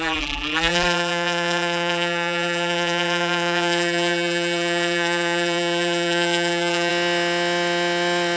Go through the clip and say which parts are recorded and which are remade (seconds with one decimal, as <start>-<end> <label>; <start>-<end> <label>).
0.0-6.9 remade; 6.9-8.4 recorded